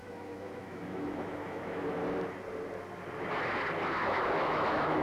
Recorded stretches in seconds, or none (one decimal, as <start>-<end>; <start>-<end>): 2.0-3.9